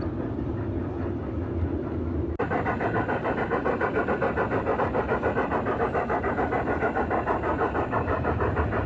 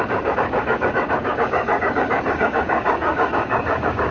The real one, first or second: first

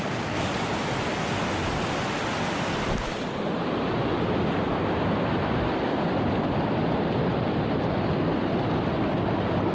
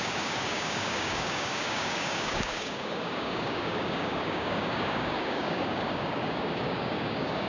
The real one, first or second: first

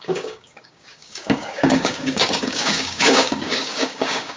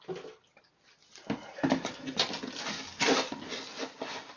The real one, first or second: second